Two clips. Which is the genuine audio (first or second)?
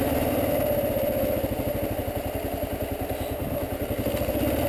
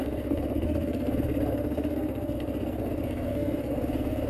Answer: first